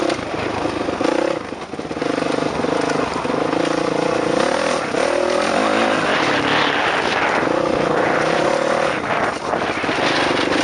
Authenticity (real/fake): real